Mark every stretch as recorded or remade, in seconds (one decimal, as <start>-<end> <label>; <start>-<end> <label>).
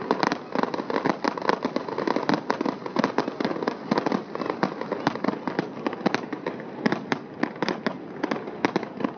0.0-9.2 recorded